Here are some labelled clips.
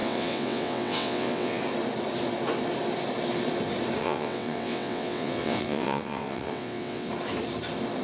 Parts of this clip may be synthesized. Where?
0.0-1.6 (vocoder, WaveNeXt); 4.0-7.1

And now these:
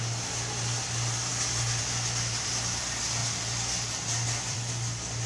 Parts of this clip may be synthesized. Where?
3.2-4.7 (vocoder, BigVGAN v2)